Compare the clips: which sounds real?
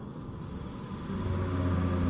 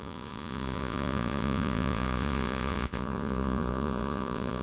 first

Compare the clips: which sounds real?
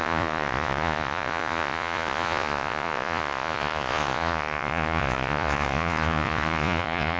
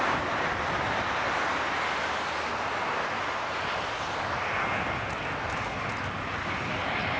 second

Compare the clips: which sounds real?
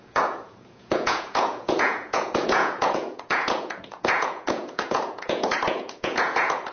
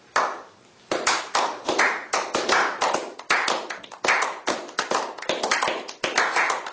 second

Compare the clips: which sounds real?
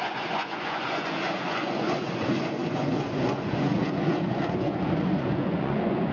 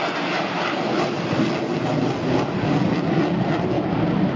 second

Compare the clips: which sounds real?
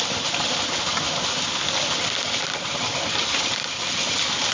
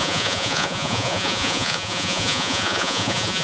first